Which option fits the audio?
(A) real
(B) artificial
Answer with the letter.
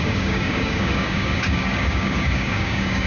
B